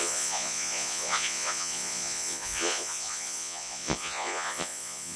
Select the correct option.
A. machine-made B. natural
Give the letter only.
A